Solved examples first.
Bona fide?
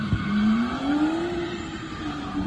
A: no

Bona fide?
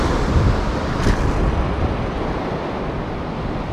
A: yes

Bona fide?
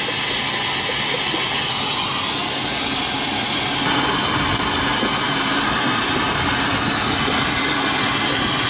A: yes